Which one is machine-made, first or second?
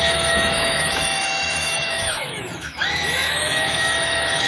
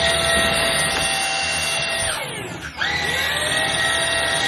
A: first